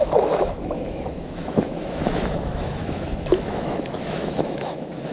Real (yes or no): no